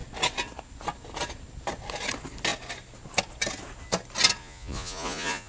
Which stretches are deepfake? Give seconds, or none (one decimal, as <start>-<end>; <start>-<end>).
4.4-5.5